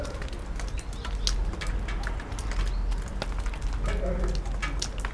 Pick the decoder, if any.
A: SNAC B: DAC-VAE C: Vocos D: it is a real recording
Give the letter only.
D